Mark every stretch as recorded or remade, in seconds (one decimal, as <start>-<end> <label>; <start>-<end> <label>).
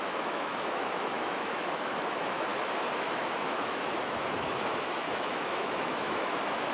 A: 0.0-6.7 remade